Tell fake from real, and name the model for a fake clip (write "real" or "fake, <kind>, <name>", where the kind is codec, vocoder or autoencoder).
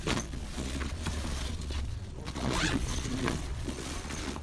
fake, vocoder, Vocos